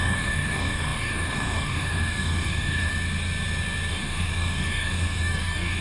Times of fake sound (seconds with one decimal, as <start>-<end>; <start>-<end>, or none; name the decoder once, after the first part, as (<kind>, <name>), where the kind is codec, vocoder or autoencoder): 0.0-2.9 (codec, DAC); 3.9-5.8